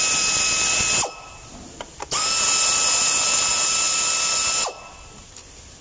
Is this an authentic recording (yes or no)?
yes